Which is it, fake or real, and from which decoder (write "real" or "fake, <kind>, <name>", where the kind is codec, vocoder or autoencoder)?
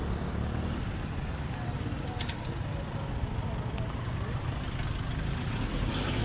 real